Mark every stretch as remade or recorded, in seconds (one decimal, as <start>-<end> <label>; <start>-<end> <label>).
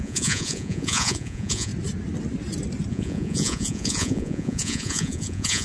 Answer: 0.0-1.7 remade; 1.7-2.9 recorded; 2.9-5.6 remade